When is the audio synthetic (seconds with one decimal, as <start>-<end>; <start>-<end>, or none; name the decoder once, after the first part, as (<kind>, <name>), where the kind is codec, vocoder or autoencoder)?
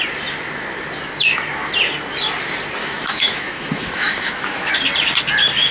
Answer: 2.8-4.7 (autoencoder, DAC-VAE)